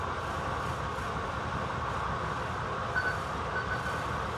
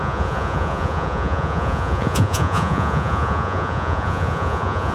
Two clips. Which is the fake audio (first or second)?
second